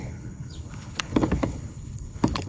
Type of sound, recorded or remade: remade